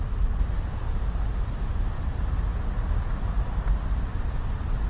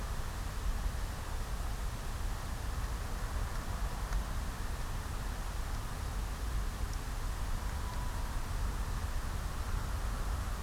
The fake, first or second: second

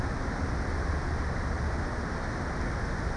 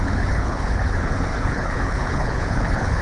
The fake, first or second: second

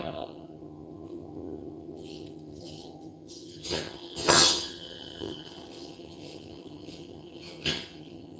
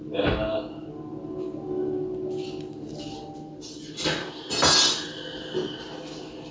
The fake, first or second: first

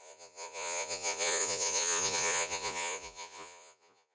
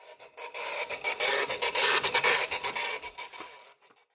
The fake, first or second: first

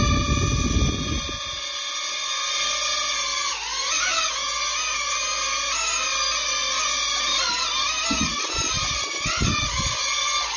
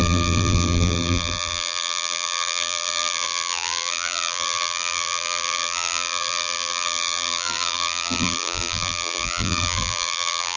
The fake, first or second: second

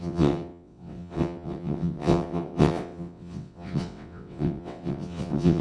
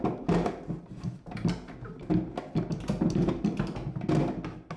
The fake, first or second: first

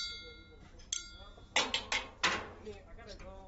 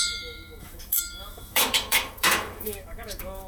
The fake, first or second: second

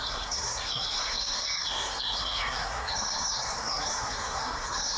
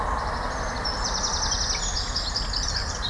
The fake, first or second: first